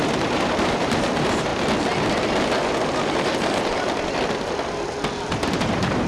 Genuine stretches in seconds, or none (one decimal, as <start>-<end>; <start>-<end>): 1.5-5.2